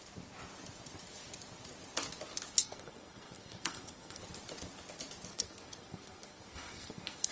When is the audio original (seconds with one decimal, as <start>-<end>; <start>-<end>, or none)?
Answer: 0.0-2.6; 4.2-5.3